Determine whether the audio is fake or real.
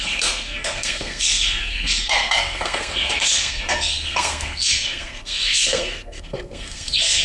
fake